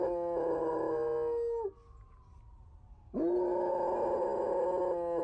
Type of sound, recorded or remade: recorded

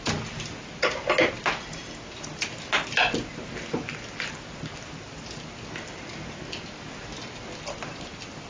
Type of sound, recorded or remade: recorded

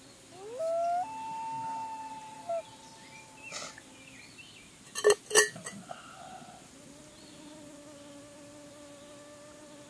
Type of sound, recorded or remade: recorded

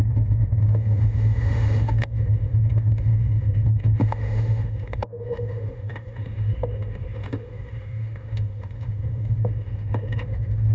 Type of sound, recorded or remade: remade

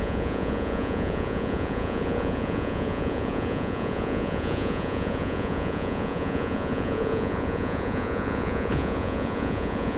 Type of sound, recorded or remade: remade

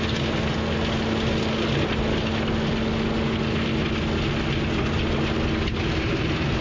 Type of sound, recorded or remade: recorded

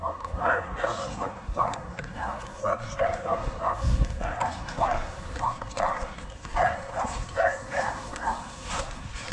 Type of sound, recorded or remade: remade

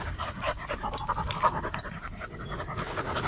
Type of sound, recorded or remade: recorded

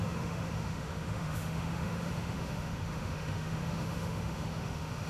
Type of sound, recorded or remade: remade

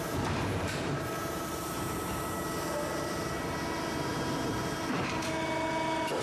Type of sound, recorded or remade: remade